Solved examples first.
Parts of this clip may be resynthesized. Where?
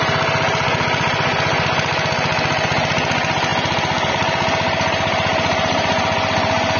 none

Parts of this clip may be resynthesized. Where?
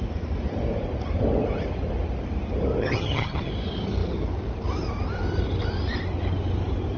2.8-3.5 (vocoder, HiFi-GAN)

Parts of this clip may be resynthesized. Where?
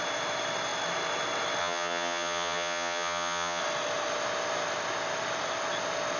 1.6-3.6 (vocoder, HiFi-GAN)